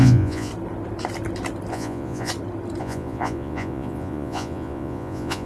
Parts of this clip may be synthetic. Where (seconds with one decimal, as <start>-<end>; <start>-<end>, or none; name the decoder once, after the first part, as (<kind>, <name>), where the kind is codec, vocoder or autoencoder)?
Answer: 0.0-0.5 (vocoder, Vocos); 1.7-2.3; 2.8-5.5